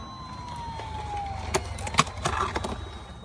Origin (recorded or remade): recorded